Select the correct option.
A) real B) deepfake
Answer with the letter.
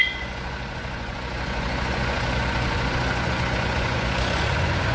B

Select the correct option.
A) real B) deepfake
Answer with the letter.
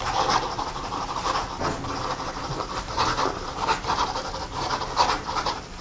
A